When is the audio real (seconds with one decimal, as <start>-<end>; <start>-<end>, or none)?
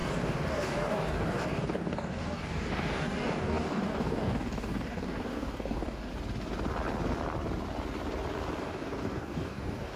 6.1-8.6